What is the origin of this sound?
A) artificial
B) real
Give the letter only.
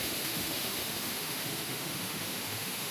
A